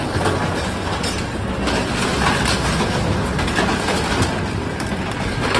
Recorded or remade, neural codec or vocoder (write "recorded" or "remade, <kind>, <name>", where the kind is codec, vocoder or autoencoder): recorded